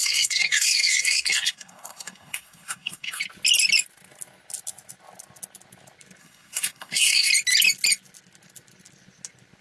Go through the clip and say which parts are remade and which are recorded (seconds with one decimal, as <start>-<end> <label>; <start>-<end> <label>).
0.0-3.2 remade; 3.2-6.2 recorded; 6.2-7.3 remade; 7.3-9.6 recorded